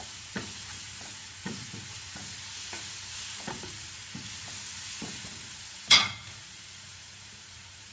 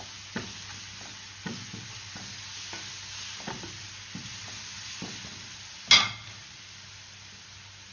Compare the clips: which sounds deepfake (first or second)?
first